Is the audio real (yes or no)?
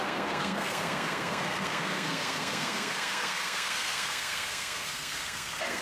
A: no